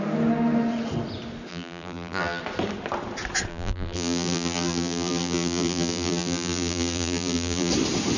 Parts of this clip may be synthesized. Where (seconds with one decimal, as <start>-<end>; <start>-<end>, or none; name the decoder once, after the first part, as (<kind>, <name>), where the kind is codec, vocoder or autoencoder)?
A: 1.5-2.4 (vocoder, BigVGAN v2); 3.5-7.7